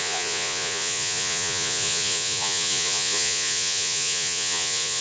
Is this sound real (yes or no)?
no